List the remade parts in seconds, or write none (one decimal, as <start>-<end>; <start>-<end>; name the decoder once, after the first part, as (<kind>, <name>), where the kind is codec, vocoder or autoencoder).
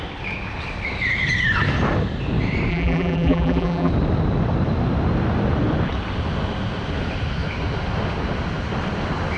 2.7-3.9 (vocoder, BigVGAN v2)